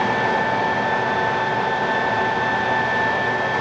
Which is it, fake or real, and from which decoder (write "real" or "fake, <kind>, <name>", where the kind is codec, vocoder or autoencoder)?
real